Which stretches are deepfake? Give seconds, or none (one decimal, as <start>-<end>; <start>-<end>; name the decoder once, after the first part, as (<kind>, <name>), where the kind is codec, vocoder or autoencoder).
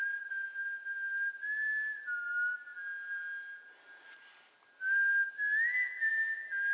none